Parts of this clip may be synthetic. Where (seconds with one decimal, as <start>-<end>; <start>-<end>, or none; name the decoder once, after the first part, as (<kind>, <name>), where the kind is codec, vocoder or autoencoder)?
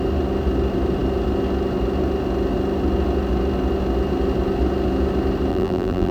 5.5-6.1 (vocoder, BigVGAN v2)